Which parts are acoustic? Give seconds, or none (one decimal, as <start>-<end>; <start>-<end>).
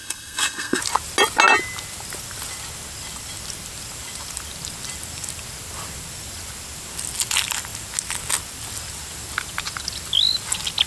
0.8-10.9